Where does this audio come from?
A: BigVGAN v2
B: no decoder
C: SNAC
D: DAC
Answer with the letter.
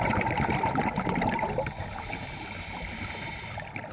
B